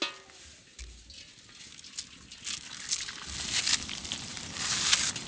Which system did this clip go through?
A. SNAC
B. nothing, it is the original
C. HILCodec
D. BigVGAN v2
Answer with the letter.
B